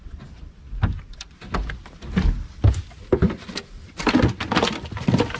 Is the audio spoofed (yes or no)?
no